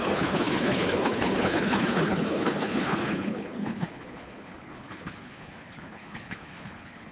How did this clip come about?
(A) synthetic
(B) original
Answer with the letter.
A